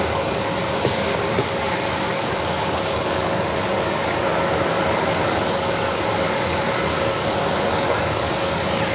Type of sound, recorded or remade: remade